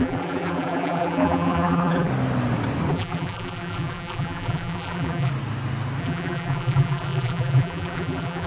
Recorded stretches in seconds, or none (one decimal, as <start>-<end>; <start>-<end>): 2.1-2.9; 5.3-6.0